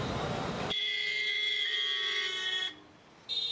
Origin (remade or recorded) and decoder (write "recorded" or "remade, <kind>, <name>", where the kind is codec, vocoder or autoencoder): recorded